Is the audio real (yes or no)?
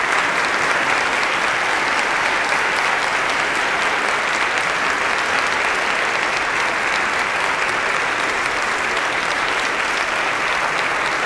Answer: yes